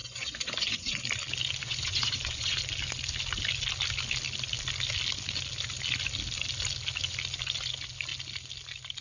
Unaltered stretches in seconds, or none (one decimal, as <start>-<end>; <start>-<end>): 1.0-1.6; 2.6-9.0